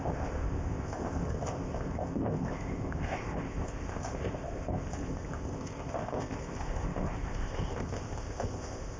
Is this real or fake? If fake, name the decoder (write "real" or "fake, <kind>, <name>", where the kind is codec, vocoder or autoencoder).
fake, codec, ZipCodec